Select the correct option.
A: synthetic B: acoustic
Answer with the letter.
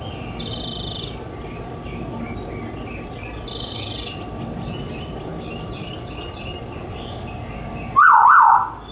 B